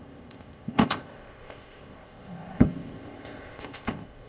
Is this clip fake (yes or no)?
yes